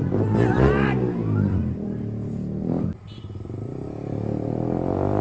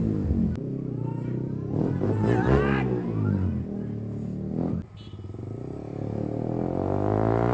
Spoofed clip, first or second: first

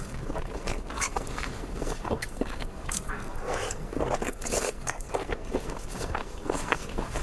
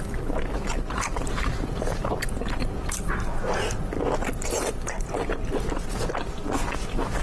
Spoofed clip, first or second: first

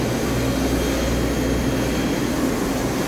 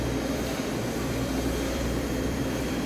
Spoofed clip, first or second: second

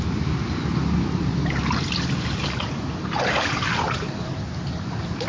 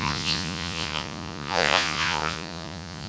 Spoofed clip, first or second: second